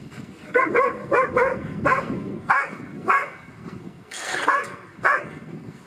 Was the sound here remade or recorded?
remade